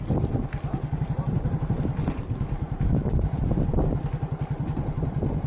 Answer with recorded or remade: recorded